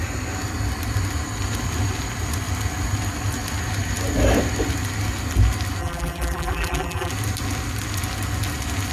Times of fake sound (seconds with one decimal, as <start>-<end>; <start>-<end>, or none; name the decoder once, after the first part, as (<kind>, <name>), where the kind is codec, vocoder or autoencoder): 5.8-7.1 (vocoder, BigVGAN v2)